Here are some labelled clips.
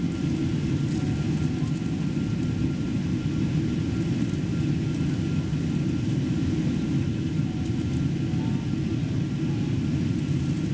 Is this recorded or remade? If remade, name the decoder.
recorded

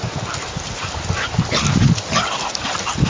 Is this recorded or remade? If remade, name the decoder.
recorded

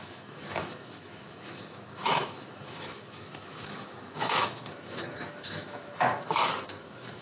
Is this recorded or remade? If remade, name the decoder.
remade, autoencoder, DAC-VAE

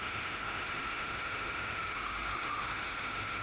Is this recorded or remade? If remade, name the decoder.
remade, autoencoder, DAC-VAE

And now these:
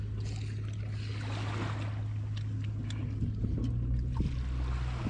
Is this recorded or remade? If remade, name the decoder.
recorded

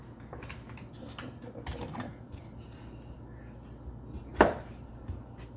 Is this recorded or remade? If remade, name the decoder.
recorded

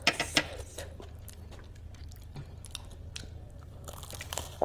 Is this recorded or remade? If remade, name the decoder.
recorded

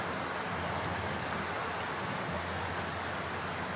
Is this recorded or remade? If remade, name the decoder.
recorded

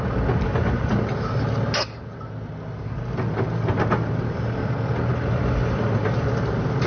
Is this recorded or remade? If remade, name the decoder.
recorded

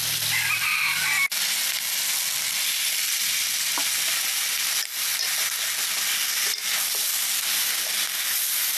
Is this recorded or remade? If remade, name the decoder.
recorded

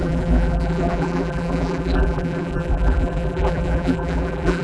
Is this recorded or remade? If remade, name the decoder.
remade, vocoder, BigVGAN v2